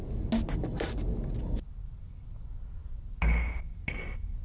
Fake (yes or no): no